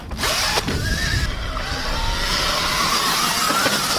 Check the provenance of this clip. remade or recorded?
recorded